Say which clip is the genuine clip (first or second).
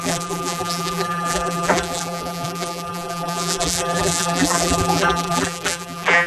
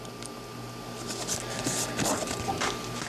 second